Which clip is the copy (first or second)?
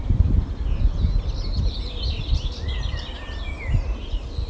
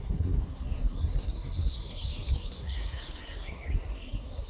second